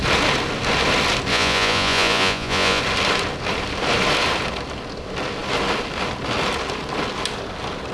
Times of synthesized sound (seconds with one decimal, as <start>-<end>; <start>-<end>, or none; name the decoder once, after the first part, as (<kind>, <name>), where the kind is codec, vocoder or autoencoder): 1.3-2.8 (vocoder, Vocos)